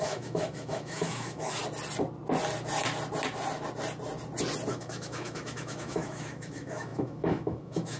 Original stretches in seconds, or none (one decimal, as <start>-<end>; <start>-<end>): 1.6-4.7